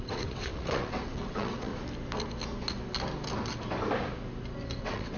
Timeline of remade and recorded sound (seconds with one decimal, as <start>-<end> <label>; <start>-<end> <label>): 0.0-1.7 remade; 1.7-4.8 recorded; 4.8-5.2 remade